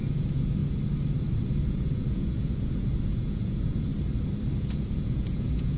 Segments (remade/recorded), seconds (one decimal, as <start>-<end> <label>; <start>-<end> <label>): 0.0-0.6 remade; 0.6-1.7 recorded; 1.7-3.9 remade; 3.9-4.6 recorded; 4.6-5.8 remade